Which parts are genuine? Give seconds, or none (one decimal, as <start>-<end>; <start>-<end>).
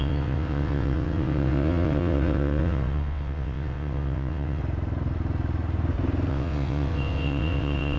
4.6-6.3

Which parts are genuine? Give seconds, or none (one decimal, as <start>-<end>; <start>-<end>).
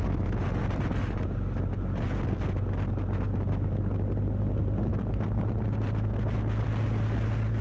0.0-7.6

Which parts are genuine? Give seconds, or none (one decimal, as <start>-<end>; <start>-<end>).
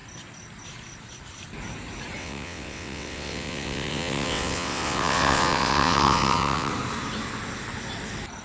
0.0-2.2; 6.7-8.4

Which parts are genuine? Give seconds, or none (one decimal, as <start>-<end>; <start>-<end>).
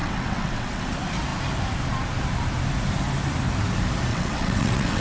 0.9-4.1